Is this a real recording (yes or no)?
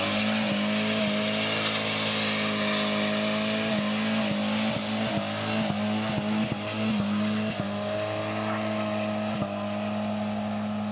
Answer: yes